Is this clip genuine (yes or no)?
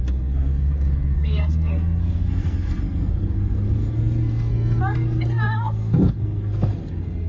no